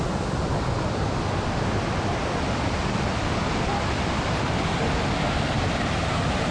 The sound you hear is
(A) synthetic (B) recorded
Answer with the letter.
B